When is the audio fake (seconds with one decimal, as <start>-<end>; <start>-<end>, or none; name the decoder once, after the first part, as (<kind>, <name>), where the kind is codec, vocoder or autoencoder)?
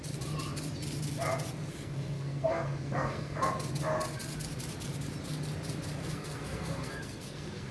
1.7-3.5 (codec, SNAC); 6.0-7.7